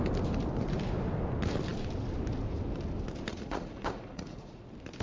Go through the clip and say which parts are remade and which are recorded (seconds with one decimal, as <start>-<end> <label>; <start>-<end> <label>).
0.0-3.3 recorded; 3.3-4.6 remade; 4.6-5.0 recorded

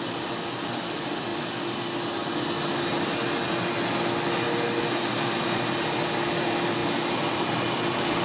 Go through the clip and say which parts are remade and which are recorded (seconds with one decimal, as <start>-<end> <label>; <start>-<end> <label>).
0.0-8.2 recorded

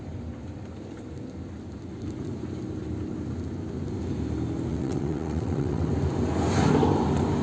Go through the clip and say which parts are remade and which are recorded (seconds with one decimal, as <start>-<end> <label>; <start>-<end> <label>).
0.0-4.7 recorded; 4.7-5.9 remade; 5.9-7.4 recorded

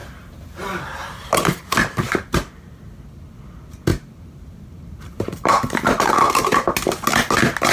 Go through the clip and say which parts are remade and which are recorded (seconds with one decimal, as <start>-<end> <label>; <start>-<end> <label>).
0.0-2.7 remade; 2.7-3.9 recorded; 3.9-6.7 remade; 6.7-7.7 recorded

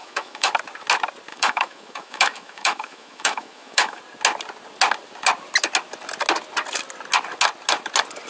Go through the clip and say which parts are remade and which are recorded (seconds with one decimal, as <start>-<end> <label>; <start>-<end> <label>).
0.0-0.5 remade; 0.5-1.3 recorded; 1.3-4.0 remade; 4.0-8.3 recorded

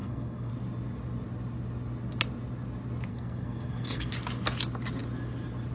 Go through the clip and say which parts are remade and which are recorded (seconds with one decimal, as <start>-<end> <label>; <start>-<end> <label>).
0.0-0.5 remade; 0.5-3.1 recorded; 3.1-4.1 remade; 4.1-5.7 recorded